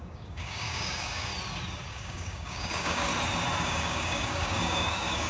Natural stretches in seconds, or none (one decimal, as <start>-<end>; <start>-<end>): 1.3-1.9; 3.1-3.6